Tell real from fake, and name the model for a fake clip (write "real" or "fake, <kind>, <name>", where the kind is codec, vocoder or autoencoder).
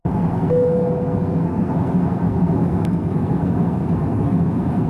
fake, codec, SNAC